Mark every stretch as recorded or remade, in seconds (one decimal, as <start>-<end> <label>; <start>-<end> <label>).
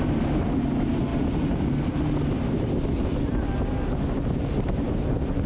0.0-1.1 recorded; 1.1-1.7 remade; 1.7-4.5 recorded; 4.5-5.5 remade